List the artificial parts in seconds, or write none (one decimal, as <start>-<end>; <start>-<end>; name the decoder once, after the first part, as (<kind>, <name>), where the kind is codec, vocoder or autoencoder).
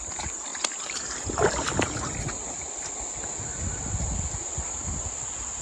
none